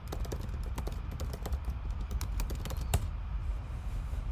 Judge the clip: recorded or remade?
recorded